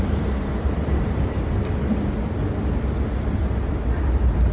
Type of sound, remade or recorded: remade